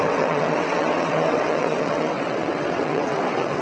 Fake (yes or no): yes